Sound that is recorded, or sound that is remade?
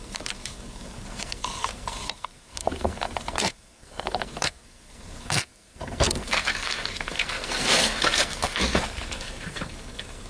remade